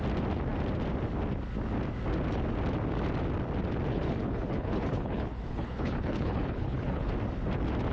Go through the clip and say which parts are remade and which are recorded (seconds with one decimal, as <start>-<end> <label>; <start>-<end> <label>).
0.0-3.9 recorded; 3.9-7.1 remade; 7.1-7.9 recorded